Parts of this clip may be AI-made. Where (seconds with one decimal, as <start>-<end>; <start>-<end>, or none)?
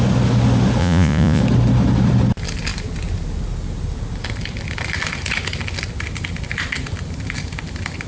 0.8-1.4